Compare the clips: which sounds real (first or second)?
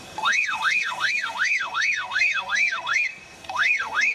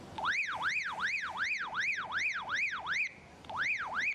second